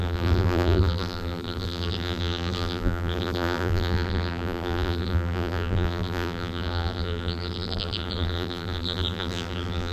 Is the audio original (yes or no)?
no